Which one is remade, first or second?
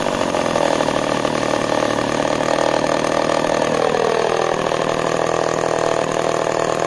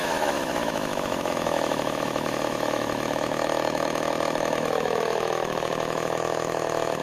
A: second